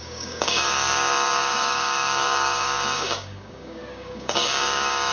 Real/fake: fake